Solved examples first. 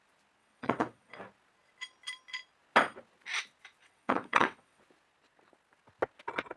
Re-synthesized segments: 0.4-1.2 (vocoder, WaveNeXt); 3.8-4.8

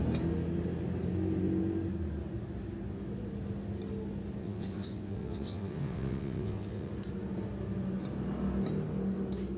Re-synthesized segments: 4.4-6.9 (vocoder, WaveNeXt)

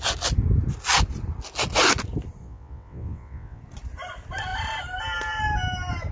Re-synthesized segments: 2.4-3.6 (vocoder, WaveNeXt)

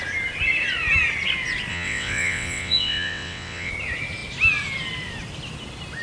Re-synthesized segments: 1.7-3.7 (vocoder, WaveNeXt)

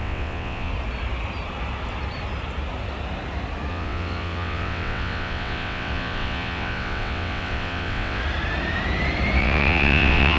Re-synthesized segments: 0.0-0.7 (vocoder, WaveNeXt); 3.7-8.2; 9.4-10.4

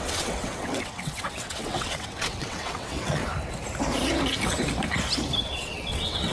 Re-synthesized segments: 0.0-3.2 (vocoder, WaveNeXt); 5.4-6.3

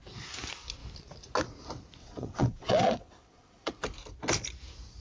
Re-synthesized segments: 2.0-3.7 (vocoder, WaveNeXt)

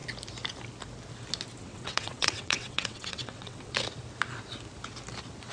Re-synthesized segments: 1.6-3.8 (vocoder, WaveNeXt)